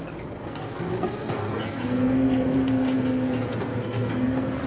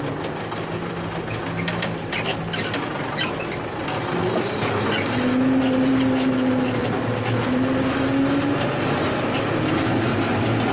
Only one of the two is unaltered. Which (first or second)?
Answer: second